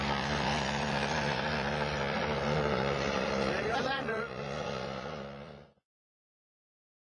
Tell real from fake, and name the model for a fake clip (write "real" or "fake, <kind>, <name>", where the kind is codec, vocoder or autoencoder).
fake, vocoder, Vocos